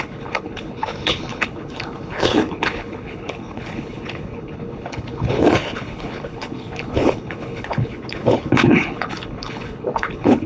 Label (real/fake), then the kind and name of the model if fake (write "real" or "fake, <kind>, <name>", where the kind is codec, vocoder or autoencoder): fake, codec, HILCodec